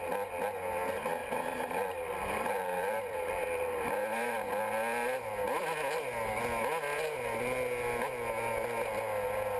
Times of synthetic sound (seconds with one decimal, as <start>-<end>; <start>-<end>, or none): 1.2-4.6